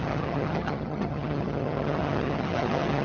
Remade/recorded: remade